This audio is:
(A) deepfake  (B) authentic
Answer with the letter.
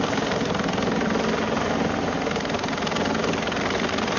B